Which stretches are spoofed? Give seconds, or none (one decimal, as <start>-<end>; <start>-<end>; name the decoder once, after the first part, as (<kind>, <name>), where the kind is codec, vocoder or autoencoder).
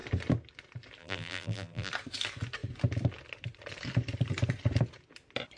1.0-1.9 (vocoder, BigVGAN v2)